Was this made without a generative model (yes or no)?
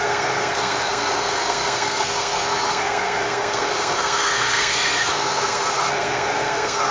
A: no